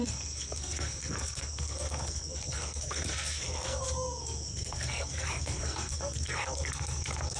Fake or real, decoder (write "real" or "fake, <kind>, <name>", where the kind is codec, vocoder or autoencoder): fake, codec, SNAC